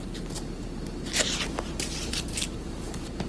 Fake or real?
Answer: real